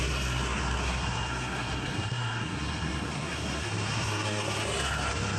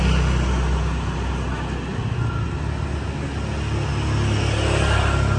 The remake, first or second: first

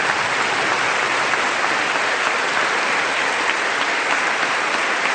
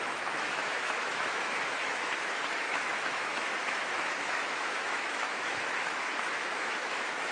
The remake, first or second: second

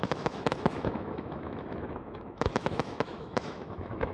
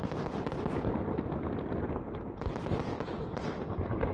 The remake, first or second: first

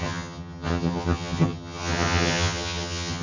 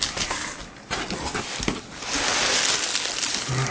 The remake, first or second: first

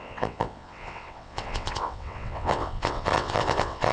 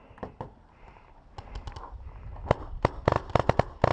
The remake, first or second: first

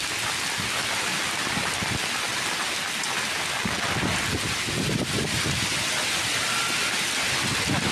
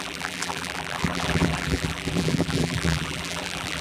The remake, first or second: second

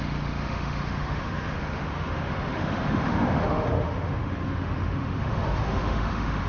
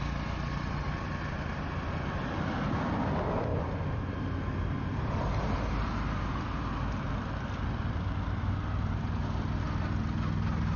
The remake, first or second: first